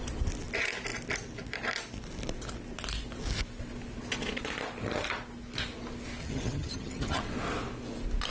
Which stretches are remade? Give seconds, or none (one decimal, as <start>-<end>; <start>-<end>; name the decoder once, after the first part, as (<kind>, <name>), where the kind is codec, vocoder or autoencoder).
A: 6.2-7.2 (vocoder, HiFi-GAN)